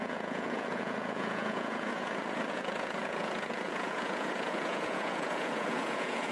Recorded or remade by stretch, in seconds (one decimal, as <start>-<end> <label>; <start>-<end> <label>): 0.0-6.3 remade